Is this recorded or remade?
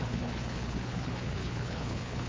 remade